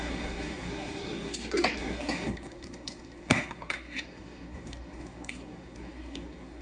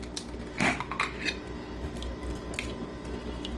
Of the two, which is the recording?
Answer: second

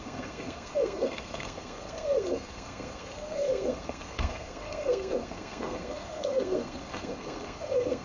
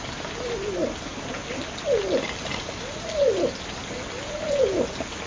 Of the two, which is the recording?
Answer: second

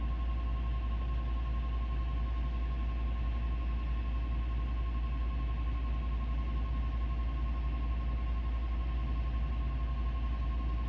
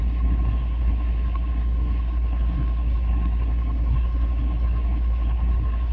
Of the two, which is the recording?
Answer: first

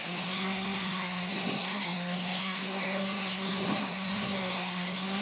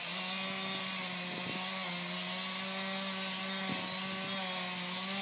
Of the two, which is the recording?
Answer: second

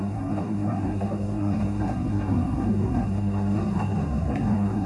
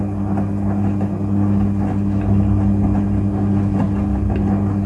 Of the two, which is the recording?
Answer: second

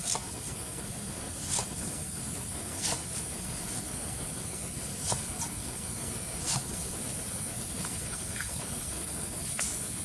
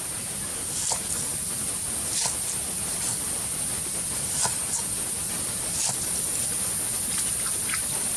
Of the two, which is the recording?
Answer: second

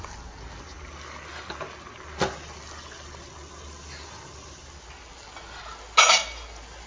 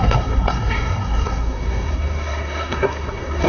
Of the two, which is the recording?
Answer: first